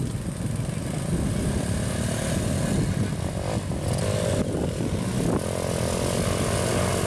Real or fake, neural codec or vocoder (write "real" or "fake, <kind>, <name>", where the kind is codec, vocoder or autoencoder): real